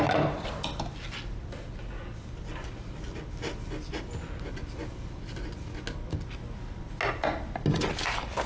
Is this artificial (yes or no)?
no